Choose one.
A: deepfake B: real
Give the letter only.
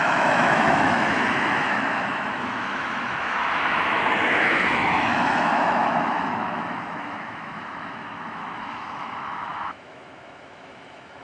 A